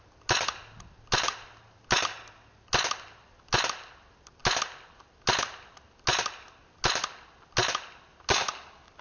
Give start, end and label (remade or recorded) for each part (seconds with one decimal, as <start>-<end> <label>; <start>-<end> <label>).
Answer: 0.0-9.0 recorded